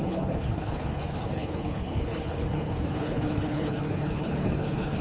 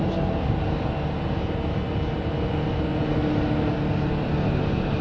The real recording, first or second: second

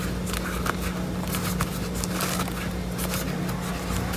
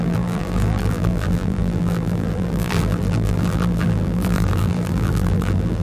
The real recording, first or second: first